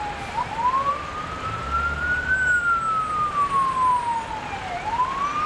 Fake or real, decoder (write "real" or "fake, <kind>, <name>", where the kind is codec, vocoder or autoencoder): real